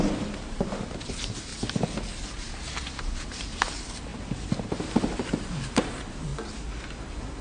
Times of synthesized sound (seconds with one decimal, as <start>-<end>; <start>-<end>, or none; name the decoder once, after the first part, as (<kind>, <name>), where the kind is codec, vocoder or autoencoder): 0.0-1.5 (vocoder, BigVGAN v2); 2.2-6.3; 7.0-7.4